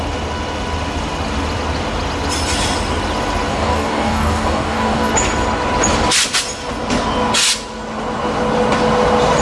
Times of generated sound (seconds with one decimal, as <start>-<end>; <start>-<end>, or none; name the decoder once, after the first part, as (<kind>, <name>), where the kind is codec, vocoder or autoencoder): 3.5-5.1 (codec, DAC)